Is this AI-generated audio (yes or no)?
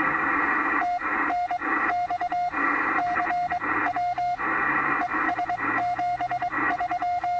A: no